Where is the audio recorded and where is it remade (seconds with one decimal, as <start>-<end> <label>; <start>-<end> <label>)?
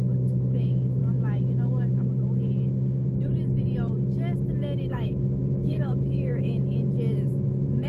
0.0-1.0 remade; 1.0-4.9 recorded; 4.9-6.3 remade; 6.3-7.3 recorded; 7.3-7.9 remade